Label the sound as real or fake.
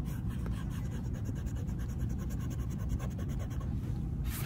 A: real